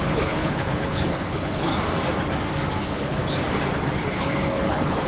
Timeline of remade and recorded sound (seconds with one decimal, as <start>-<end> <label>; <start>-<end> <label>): 0.0-1.7 remade; 1.7-2.8 recorded; 2.8-3.2 remade; 3.2-4.0 recorded; 4.0-5.1 remade